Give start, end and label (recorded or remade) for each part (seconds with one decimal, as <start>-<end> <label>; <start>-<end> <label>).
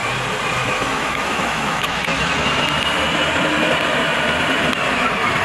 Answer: 0.0-0.7 recorded; 0.7-2.1 remade; 2.1-5.4 recorded